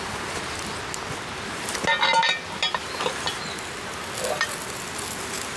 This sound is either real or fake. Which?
real